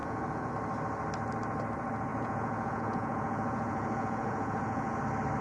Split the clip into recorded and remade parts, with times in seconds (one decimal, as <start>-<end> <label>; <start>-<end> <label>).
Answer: 0.0-0.5 remade; 0.5-2.1 recorded; 2.1-5.0 remade; 5.0-5.4 recorded